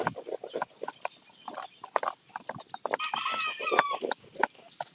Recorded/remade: recorded